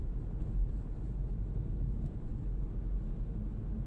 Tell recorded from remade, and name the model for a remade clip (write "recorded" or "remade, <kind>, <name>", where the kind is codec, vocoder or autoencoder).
recorded